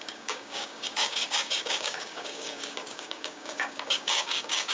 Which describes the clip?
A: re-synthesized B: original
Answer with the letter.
A